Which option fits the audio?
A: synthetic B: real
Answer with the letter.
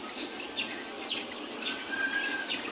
B